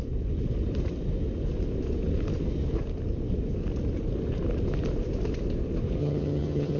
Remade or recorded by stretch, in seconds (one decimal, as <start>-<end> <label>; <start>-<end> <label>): 0.0-6.0 recorded; 6.0-6.8 remade